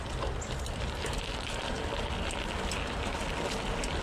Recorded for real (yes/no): yes